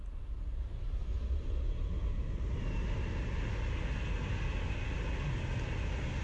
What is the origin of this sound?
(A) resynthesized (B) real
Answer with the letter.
B